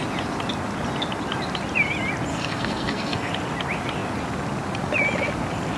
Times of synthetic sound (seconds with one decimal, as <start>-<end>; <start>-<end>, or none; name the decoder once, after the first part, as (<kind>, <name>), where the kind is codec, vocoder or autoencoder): 2.3-3.3 (codec, SNAC)